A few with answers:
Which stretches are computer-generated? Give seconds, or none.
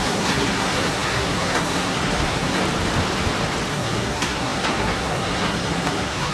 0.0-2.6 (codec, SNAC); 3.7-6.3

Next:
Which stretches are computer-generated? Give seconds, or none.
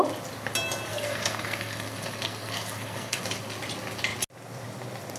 0.9-3.2 (codec, SNAC)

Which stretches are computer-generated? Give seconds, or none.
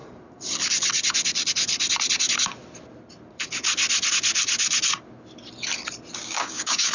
6.2-6.9 (codec, DAC)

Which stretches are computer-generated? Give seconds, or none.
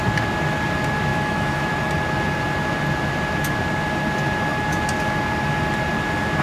1.1-1.7 (autoencoder, DAC-VAE)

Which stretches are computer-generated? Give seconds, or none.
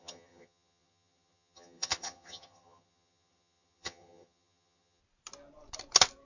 0.0-5.0 (vocoder, HiFi-GAN)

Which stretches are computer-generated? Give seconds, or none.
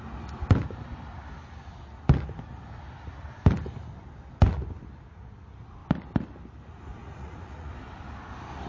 7.0-7.7 (vocoder, Vocos)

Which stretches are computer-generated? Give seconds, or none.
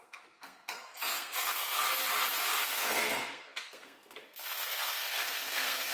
0.0-1.8 (codec, SNAC); 2.5-5.9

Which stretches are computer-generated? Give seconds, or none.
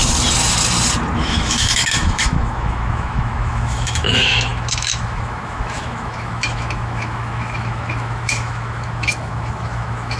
1.2-10.2 (autoencoder, DAC-VAE)